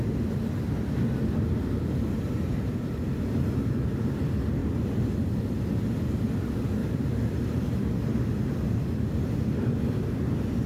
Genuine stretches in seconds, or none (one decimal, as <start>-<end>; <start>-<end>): 0.0-4.6; 5.6-6.8; 7.9-10.7